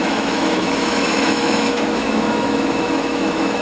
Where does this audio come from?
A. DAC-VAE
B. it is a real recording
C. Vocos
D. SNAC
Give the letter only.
A